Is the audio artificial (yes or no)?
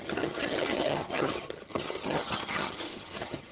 yes